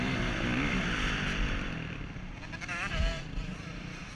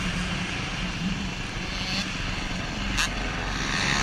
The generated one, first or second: first